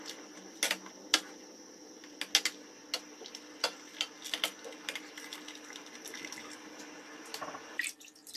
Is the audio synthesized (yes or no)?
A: no